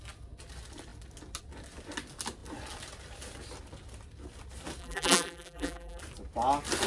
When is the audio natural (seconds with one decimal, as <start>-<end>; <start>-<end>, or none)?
0.0-4.8; 6.0-6.9